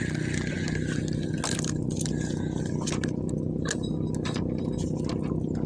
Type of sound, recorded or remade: recorded